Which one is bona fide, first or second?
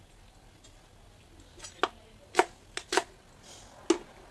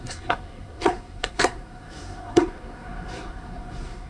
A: first